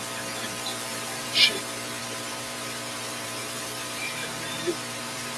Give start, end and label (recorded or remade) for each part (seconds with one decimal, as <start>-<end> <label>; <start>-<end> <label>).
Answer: 0.0-0.9 recorded; 0.9-1.6 remade; 1.6-2.0 recorded; 2.0-5.4 remade